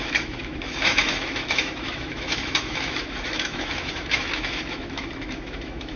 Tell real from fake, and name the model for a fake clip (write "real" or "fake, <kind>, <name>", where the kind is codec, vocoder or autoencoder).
fake, autoencoder, DAC-VAE